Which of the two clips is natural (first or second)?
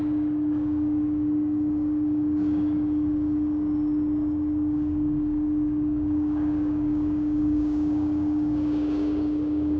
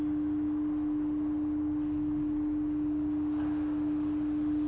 second